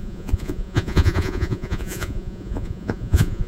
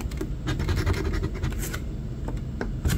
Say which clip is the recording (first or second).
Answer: second